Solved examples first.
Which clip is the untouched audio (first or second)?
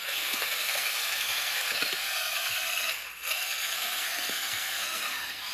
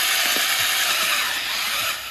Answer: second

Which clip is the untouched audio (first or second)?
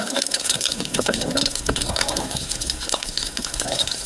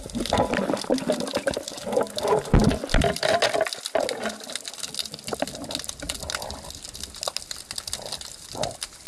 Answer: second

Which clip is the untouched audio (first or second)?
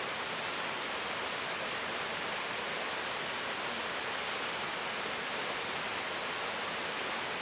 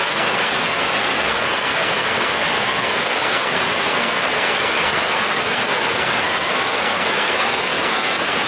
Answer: first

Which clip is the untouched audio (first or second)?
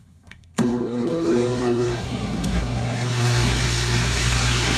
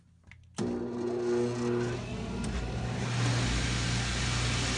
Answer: second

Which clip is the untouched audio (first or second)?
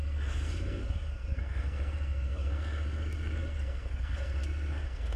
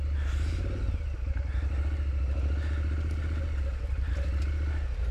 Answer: second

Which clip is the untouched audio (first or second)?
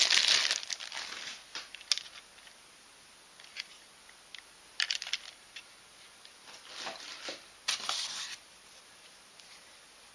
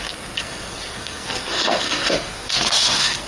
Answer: first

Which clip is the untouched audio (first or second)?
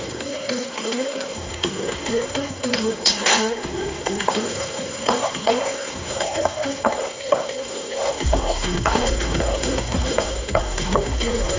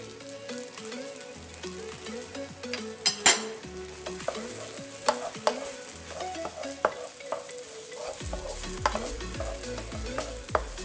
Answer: second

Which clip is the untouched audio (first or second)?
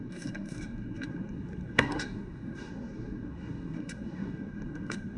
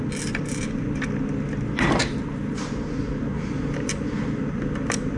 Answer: second